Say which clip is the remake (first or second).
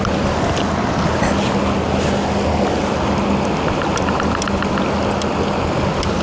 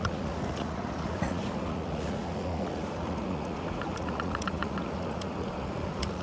second